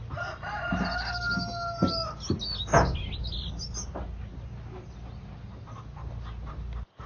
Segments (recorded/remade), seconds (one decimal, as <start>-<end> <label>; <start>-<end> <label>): 0.0-7.1 recorded